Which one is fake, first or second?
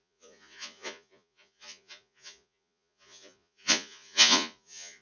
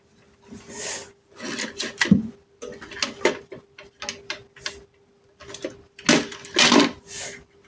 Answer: first